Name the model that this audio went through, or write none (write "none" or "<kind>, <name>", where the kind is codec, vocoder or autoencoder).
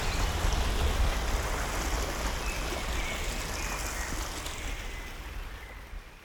none